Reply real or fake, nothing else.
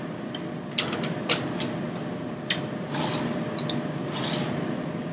real